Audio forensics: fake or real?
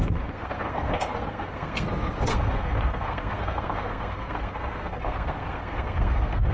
fake